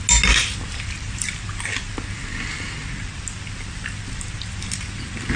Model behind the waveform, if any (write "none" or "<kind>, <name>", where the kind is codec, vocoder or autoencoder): none